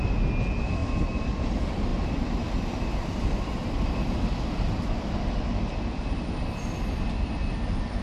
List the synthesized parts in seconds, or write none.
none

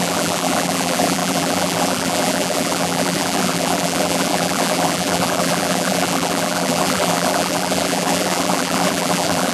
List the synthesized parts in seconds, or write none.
0.0-9.5 (vocoder, BigVGAN v2)

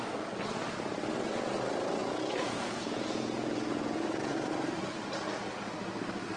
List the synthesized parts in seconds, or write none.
2.0-4.5 (vocoder, Vocos)